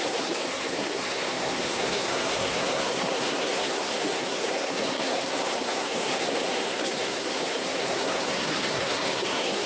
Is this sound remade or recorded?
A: remade